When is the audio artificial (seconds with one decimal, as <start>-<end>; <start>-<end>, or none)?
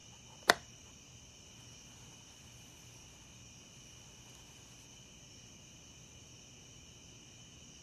none